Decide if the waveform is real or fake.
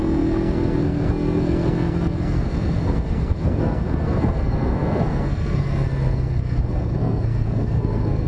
fake